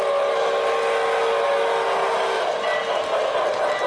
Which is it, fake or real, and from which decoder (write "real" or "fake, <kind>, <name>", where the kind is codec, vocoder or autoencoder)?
real